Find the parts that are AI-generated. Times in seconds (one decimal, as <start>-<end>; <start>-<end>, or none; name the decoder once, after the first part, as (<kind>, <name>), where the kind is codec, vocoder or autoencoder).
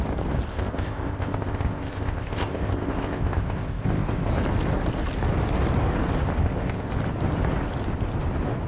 0.5-4.3 (codec, ZipCodec); 6.4-6.9